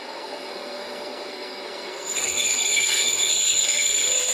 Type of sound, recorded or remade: remade